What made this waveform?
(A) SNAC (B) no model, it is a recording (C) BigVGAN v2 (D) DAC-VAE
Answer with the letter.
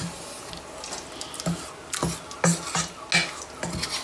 B